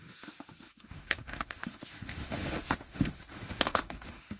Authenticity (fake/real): fake